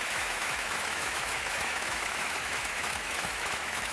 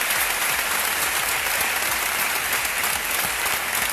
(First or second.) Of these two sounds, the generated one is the first